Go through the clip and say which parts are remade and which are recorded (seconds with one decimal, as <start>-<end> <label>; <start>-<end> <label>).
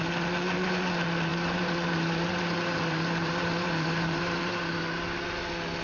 0.0-1.3 recorded; 1.3-4.8 remade; 4.8-5.8 recorded